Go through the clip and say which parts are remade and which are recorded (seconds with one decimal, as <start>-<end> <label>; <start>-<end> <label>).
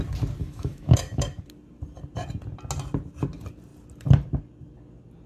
0.0-0.4 recorded; 0.4-1.4 remade; 1.4-5.3 recorded